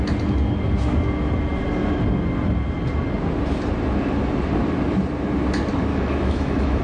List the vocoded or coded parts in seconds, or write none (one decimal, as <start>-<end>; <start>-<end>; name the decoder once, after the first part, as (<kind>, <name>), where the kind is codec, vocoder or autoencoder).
5.9-6.8 (autoencoder, DAC-VAE)